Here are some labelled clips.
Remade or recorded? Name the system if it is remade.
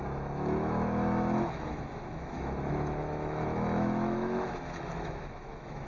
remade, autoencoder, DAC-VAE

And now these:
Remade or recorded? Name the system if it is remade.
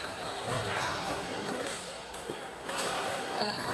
remade, codec, SNAC